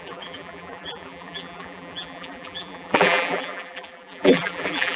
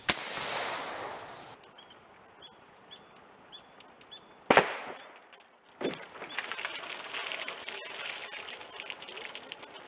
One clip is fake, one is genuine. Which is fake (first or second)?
first